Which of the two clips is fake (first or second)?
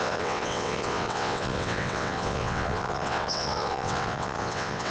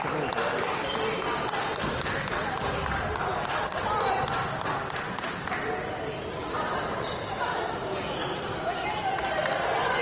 first